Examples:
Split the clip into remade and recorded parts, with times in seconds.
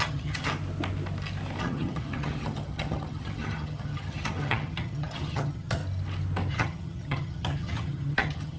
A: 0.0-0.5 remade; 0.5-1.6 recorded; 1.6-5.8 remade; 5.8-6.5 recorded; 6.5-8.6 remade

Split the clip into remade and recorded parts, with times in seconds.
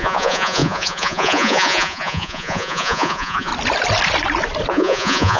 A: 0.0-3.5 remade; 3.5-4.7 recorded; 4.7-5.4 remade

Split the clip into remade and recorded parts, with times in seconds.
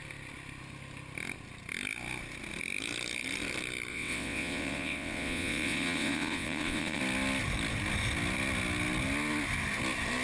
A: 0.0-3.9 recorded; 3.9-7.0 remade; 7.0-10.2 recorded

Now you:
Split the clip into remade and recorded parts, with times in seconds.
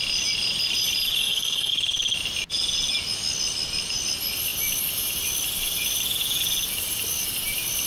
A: 0.0-1.2 recorded; 1.2-1.7 remade; 1.7-7.9 recorded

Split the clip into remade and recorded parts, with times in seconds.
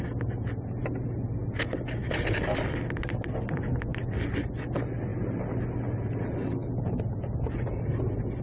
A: 0.0-8.4 recorded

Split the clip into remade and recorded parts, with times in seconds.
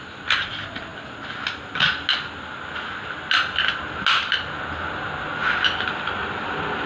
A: 0.0-6.9 recorded